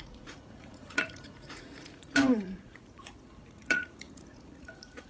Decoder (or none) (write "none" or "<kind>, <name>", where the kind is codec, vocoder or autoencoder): vocoder, Vocos